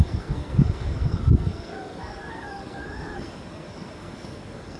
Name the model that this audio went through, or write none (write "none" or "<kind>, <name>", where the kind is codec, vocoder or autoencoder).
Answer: codec, SNAC